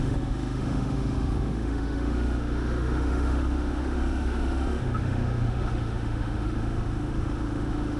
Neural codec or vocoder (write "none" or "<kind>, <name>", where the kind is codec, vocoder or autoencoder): autoencoder, DAC-VAE